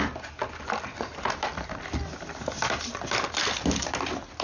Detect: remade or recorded recorded